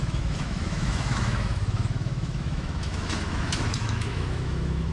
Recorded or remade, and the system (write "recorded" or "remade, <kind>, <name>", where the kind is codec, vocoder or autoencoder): remade, autoencoder, DAC-VAE